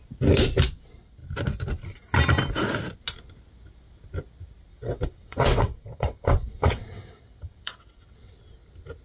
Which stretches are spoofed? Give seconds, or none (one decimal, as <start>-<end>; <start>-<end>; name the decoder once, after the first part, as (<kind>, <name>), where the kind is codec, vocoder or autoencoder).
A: 4.7-8.4 (vocoder, WaveNeXt)